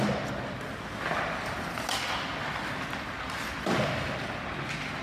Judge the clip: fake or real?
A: real